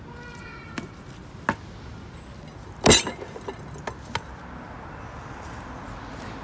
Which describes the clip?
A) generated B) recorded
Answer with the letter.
B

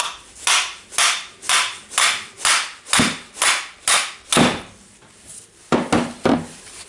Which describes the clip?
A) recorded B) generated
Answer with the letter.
A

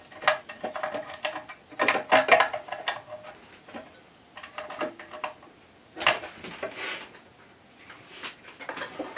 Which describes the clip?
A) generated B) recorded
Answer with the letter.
B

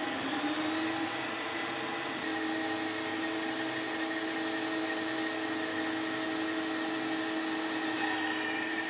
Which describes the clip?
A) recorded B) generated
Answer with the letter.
A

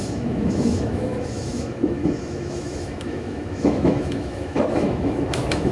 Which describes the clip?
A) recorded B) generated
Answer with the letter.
B